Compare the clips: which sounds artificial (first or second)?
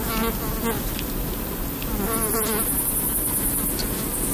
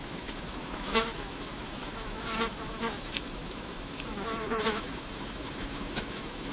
second